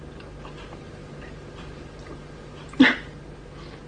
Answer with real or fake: real